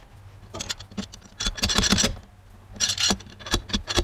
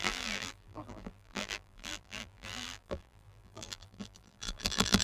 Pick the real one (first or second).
first